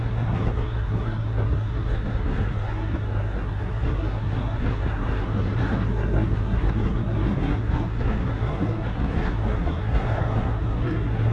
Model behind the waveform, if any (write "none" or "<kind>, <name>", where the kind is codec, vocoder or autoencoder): codec, SNAC